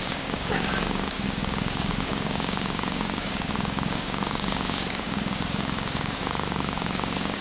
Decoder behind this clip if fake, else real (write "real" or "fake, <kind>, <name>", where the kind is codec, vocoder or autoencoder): fake, codec, DAC